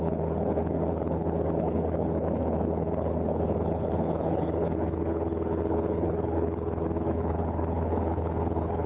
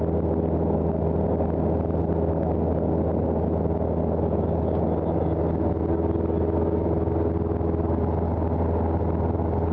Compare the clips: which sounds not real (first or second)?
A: first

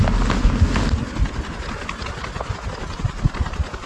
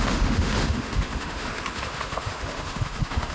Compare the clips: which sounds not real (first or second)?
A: second